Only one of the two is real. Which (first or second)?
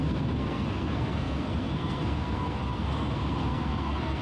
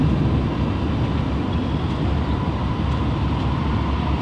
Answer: second